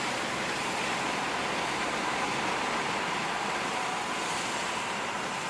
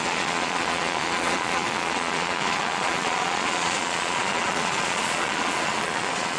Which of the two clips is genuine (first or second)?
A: first